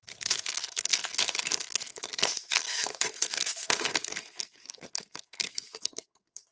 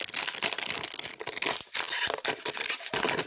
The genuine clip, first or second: second